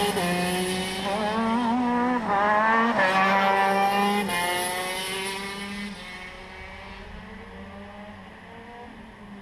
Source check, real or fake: real